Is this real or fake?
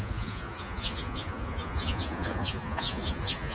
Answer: fake